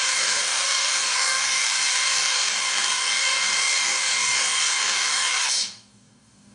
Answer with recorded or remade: remade